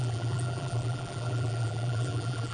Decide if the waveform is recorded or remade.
remade